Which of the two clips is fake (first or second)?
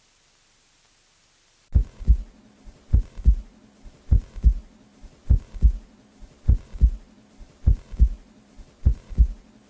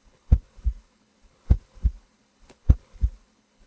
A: second